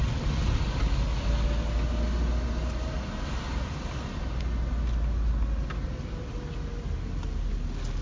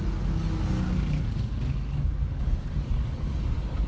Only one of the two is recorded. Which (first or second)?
first